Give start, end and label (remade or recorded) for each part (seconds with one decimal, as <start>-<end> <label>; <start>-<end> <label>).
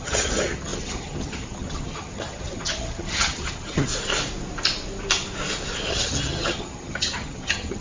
0.0-3.9 remade; 3.9-5.9 recorded; 5.9-7.8 remade